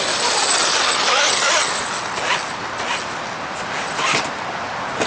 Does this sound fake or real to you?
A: real